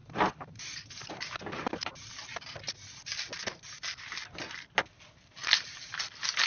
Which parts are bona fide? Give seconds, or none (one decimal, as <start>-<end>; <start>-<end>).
1.9-5.4; 6.0-6.5